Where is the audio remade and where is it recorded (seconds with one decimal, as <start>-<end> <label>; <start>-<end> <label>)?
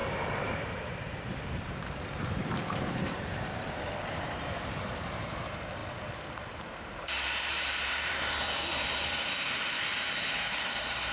0.0-11.1 remade